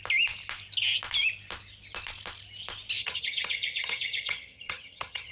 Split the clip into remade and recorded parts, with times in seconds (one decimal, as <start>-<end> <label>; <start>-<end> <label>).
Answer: 0.0-3.0 recorded; 3.0-5.3 remade